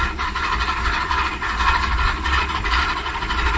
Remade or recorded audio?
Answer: remade